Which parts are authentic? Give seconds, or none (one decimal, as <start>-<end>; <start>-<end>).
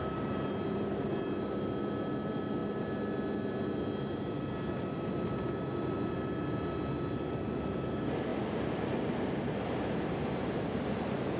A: 0.0-11.4